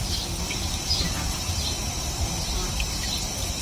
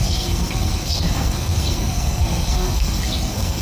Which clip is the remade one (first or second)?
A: second